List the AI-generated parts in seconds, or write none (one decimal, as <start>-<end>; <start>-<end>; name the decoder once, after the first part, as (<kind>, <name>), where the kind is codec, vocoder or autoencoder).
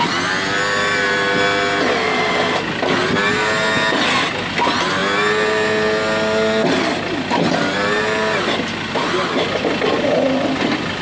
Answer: none